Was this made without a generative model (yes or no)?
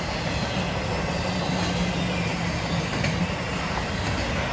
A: yes